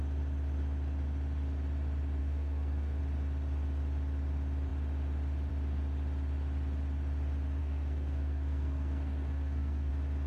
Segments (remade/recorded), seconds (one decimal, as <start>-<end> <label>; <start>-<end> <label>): 0.0-2.2 recorded; 2.2-3.0 remade; 3.0-7.6 recorded; 7.6-9.9 remade; 9.9-10.3 recorded